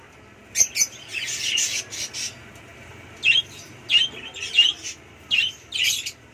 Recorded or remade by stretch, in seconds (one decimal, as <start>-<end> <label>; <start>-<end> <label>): 0.0-2.7 recorded; 2.7-6.3 remade